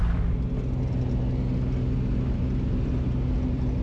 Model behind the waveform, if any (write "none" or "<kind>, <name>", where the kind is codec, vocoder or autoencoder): none